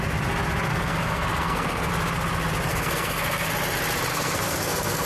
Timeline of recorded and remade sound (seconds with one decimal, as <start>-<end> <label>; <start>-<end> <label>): 0.0-0.7 recorded; 0.7-1.9 remade; 1.9-2.7 recorded; 2.7-3.5 remade; 3.5-4.1 recorded; 4.1-5.1 remade